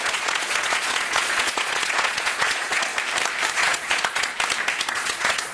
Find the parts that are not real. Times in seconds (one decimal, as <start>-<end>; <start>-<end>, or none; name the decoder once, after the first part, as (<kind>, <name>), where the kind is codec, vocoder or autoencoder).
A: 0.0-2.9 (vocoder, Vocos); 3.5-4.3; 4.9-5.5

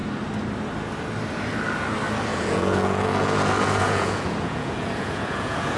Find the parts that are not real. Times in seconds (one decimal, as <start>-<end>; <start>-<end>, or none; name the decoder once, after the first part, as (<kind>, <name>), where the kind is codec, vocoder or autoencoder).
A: 2.3-5.8 (vocoder, Vocos)

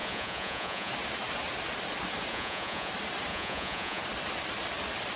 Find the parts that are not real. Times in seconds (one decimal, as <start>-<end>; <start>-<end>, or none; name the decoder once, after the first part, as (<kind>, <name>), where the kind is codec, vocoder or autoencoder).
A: 0.0-0.9 (vocoder, Vocos); 2.3-2.9; 3.3-4.0

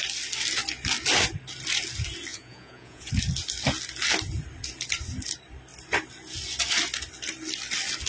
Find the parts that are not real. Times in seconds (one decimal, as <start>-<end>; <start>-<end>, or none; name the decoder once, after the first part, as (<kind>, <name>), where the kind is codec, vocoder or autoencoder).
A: 2.3-3.1 (vocoder, Vocos)

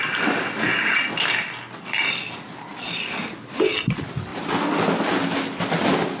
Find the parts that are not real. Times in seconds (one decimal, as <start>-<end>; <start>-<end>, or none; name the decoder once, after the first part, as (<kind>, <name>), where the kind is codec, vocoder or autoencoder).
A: none